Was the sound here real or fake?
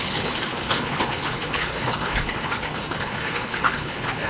fake